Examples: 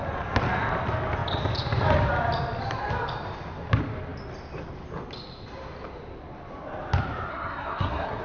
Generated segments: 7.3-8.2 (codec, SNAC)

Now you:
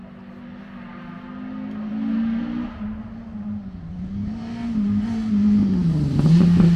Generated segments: none

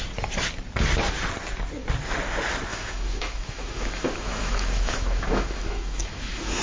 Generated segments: 2.7-6.6 (autoencoder, DAC-VAE)

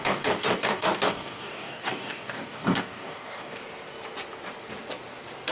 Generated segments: 0.0-3.6 (codec, DAC)